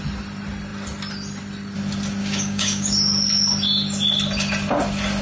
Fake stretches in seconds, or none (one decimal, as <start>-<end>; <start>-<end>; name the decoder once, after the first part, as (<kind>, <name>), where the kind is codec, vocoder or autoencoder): 2.2-3.2 (codec, DAC)